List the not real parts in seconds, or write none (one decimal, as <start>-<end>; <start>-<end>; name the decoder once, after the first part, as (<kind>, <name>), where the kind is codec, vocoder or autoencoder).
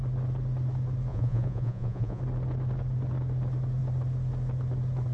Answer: 1.1-2.2 (vocoder, Vocos)